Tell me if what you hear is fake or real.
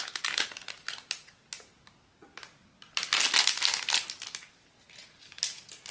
real